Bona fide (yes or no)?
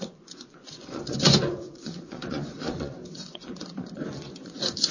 no